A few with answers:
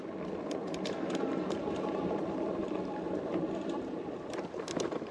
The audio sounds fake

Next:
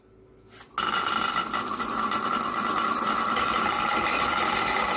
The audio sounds real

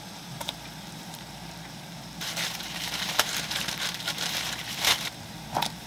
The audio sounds fake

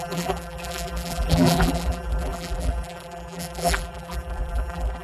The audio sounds fake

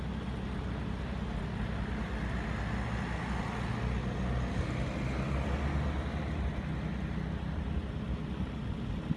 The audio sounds real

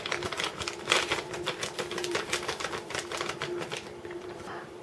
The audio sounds fake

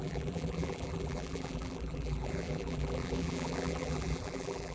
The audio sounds fake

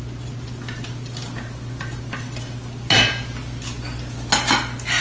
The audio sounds real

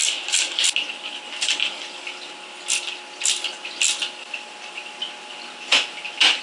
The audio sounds real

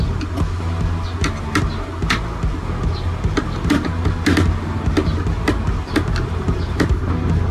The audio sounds real